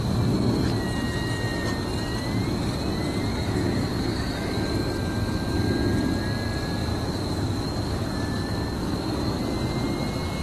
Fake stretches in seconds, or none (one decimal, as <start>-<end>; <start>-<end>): 3.3-4.9; 6.9-9.4